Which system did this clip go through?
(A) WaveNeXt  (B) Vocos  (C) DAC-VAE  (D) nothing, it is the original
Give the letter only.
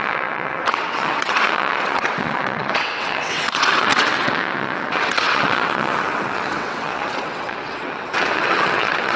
A